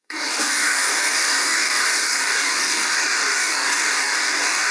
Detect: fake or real fake